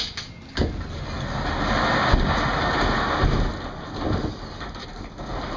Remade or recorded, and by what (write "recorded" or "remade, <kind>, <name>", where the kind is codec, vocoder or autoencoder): recorded